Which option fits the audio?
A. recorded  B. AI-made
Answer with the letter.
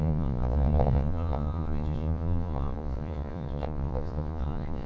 B